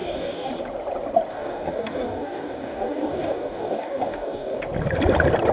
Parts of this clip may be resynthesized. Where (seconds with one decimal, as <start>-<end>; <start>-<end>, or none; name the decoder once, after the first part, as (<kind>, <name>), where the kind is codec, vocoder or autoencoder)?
0.0-0.5 (codec, DAC); 1.3-4.6